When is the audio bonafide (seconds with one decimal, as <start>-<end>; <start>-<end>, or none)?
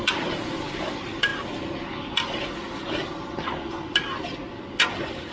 0.0-5.3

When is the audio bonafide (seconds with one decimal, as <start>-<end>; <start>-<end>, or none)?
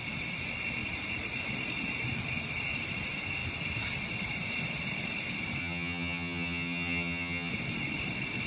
0.0-5.6; 7.5-8.5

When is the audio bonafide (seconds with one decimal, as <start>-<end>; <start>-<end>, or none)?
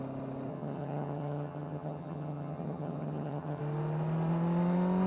0.0-0.5; 3.6-5.1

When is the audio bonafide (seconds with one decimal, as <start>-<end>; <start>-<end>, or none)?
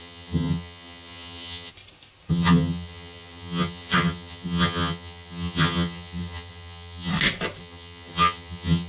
1.7-2.3; 7.1-7.6